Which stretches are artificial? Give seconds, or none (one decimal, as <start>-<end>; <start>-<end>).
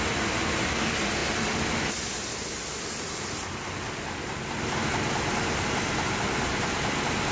none